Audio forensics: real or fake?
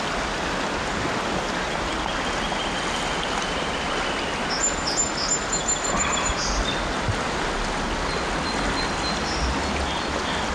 real